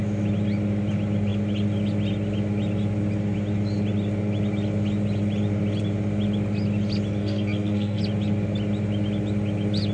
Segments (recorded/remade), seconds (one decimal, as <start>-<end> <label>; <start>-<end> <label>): 0.0-7.2 recorded; 7.2-8.0 remade; 8.0-9.9 recorded